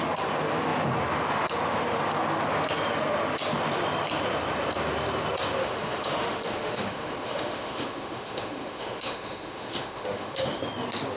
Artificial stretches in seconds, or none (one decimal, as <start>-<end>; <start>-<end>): 5.6-10.6